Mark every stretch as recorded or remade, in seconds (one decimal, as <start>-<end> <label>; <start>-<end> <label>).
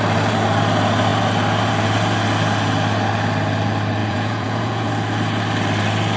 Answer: 0.0-4.0 recorded; 4.0-4.9 remade; 4.9-6.2 recorded